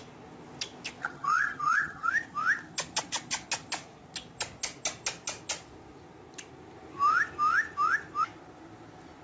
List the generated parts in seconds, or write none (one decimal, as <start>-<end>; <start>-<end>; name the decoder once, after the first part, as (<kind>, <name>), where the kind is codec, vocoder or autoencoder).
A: 1.0-2.1 (vocoder, HiFi-GAN)